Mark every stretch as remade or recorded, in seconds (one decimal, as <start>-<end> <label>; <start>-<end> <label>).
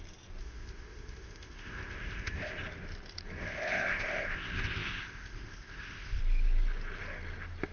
0.0-0.4 recorded; 0.4-2.6 remade; 2.6-3.4 recorded; 3.4-6.2 remade; 6.2-7.7 recorded